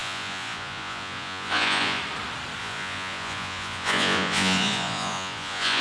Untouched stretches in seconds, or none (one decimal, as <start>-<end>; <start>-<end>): 2.0-2.6

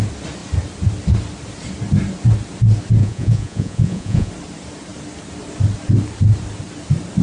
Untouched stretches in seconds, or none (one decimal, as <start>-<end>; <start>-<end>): 0.0-3.0; 4.3-7.2

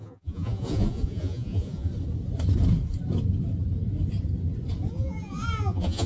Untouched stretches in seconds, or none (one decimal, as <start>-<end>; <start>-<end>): 1.9-4.9

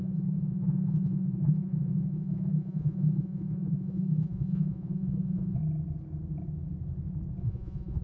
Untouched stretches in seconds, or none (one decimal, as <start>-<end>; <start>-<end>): 5.6-7.4

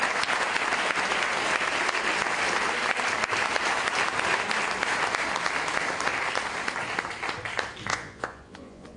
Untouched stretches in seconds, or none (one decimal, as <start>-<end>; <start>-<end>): 0.0-7.9

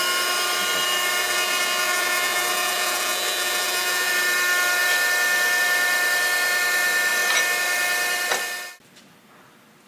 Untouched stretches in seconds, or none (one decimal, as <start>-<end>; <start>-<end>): 0.0-1.2; 4.1-9.9